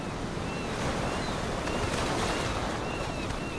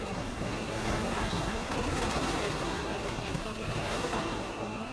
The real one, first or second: first